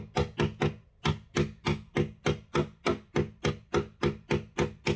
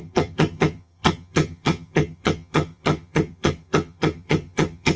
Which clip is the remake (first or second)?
second